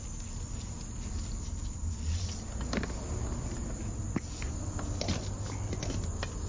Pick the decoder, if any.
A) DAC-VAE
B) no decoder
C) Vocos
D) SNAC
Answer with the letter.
B